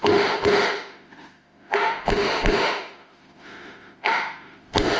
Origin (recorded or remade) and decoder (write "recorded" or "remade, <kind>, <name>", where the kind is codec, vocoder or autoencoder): remade, autoencoder, DAC-VAE